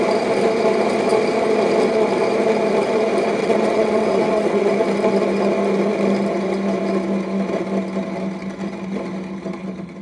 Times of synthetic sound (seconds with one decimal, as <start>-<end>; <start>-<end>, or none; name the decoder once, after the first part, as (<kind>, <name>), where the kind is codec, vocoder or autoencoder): 3.4-4.7 (vocoder, WaveNeXt)